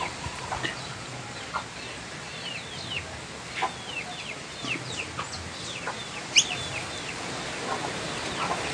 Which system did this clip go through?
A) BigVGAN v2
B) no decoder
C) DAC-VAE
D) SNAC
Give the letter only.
B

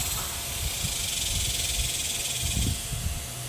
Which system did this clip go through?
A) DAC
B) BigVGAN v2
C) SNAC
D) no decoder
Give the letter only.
D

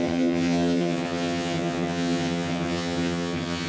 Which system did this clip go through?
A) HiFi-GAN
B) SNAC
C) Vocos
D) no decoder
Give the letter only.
A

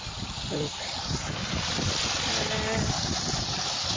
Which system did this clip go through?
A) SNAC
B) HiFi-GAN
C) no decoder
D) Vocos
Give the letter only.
C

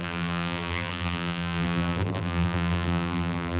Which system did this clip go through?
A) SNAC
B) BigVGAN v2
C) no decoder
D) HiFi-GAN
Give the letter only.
B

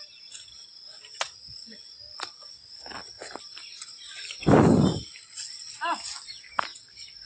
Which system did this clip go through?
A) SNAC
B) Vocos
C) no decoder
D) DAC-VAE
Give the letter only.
C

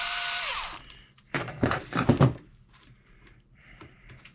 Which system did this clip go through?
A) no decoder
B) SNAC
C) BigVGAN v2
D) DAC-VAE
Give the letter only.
C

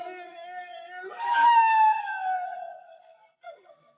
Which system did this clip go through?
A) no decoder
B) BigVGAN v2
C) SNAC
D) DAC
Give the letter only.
C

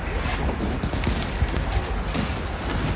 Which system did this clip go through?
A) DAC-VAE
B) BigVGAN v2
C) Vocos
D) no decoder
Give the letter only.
D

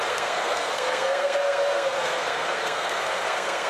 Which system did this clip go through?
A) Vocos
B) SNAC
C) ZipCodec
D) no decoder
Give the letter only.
B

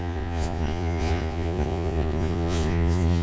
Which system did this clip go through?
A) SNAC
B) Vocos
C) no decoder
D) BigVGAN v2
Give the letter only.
B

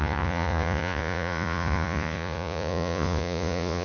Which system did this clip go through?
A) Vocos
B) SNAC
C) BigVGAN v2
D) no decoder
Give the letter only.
A